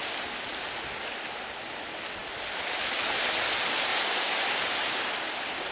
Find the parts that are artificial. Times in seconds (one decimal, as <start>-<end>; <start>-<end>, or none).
0.0-0.5; 3.9-5.1